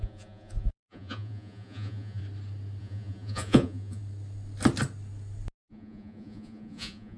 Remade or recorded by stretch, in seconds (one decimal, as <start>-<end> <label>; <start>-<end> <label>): 0.0-2.2 remade; 2.2-2.8 recorded; 2.8-4.0 remade; 4.0-5.7 recorded; 5.7-7.2 remade